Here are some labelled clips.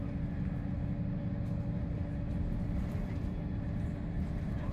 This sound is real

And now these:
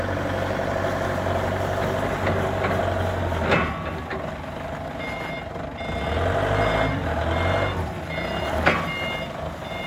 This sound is real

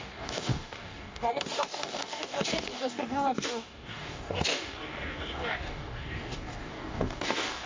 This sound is fake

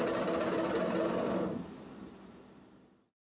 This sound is real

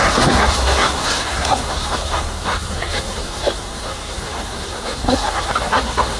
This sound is fake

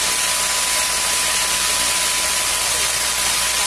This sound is real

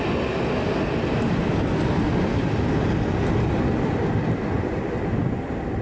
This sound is real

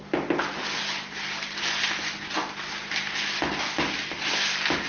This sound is real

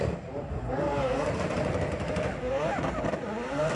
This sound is real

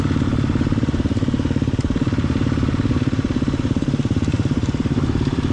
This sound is fake